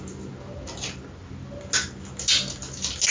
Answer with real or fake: real